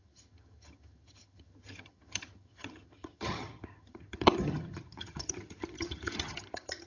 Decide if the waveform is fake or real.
fake